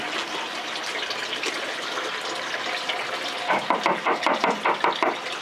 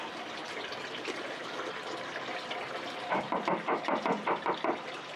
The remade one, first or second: second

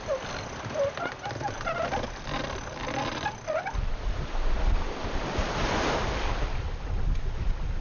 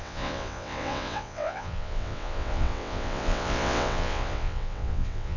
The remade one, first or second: second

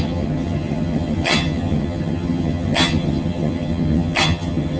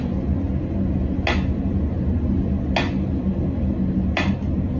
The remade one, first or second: first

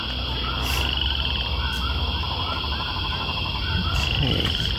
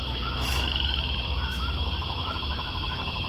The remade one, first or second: second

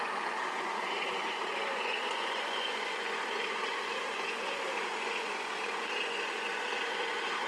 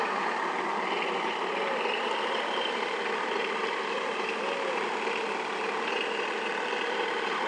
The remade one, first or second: first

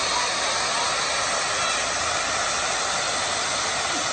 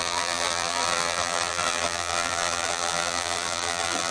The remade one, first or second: second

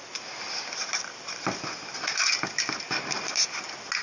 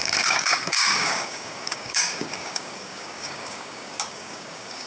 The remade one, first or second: second